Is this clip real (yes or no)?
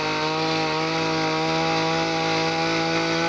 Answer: yes